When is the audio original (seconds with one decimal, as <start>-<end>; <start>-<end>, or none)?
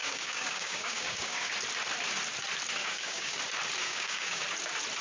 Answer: 1.5-2.8; 3.4-3.8; 4.4-5.0